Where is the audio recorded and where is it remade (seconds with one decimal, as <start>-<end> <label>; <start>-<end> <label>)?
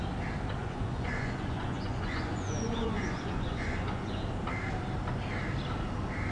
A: 0.0-0.6 recorded; 0.6-4.2 remade; 4.2-6.3 recorded